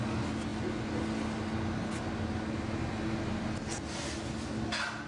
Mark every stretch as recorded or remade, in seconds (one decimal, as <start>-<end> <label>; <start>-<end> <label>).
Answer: 0.0-5.1 recorded